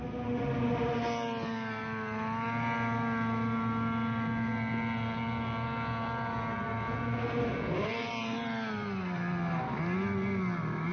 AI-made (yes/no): no